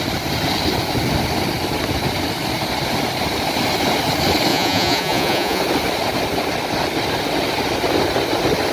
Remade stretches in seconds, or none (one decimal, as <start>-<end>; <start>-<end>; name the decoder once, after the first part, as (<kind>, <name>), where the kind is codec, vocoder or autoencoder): 4.5-5.6 (vocoder, Vocos)